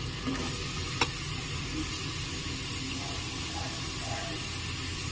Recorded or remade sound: recorded